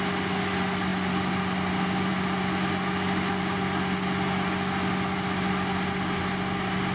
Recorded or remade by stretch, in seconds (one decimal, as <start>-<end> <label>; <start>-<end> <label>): 0.0-6.9 recorded

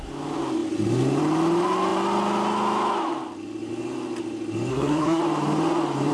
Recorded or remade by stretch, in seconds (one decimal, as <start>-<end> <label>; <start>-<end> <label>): 0.0-4.7 recorded; 4.7-5.2 remade; 5.2-6.1 recorded

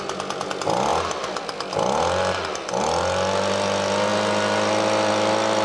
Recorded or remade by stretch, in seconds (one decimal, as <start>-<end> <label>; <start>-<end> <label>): 0.0-5.6 recorded

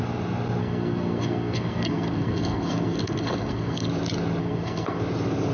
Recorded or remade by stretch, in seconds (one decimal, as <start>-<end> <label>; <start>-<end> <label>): 0.0-0.6 recorded; 0.6-3.9 remade; 3.9-4.4 recorded; 4.4-5.0 remade; 5.0-5.5 recorded

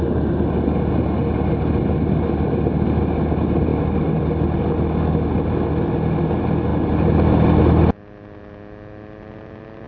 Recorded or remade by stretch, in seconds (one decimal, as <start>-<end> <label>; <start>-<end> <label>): 0.0-9.9 recorded